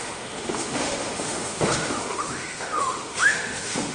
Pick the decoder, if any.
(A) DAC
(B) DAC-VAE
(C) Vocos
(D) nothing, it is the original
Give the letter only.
B